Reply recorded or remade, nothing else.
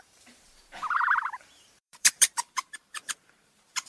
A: remade